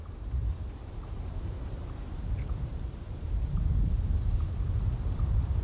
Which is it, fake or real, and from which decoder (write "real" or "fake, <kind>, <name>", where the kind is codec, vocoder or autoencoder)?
fake, vocoder, BigVGAN v2